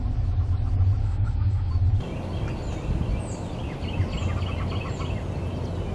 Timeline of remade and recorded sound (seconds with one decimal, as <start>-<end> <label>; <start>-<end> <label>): 0.0-1.0 recorded; 1.0-1.7 remade; 1.7-5.9 recorded